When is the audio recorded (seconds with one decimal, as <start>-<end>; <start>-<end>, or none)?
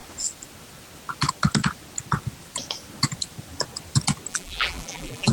0.0-4.3